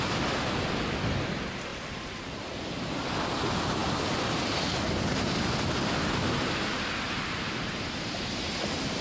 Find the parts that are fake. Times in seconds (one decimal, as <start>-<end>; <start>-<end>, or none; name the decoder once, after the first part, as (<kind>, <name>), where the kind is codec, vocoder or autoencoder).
1.7-2.4 (vocoder, BigVGAN v2)